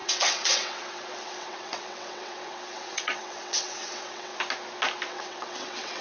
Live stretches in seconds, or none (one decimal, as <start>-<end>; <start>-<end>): 4.3-5.1